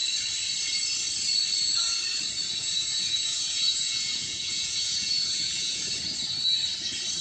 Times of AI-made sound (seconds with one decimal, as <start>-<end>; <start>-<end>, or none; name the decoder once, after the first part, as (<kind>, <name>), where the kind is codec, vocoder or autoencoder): 2.6-5.8 (vocoder, Vocos)